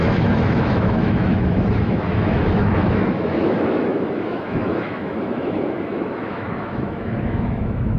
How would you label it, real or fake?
fake